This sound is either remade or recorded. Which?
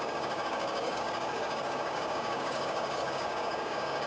remade